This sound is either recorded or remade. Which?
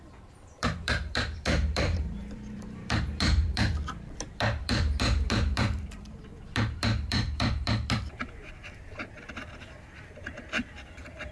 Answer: remade